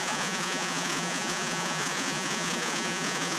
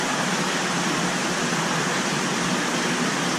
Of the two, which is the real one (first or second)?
second